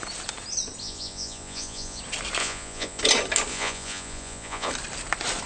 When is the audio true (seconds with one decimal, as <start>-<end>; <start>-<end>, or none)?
0.0-0.8; 2.0-2.4; 3.0-3.5; 4.7-5.5